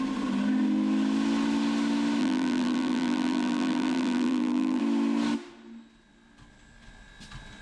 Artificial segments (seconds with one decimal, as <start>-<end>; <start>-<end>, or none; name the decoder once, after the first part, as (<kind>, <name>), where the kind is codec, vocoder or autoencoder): 2.2-4.8 (vocoder, BigVGAN v2)